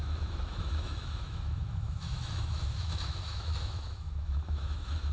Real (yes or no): no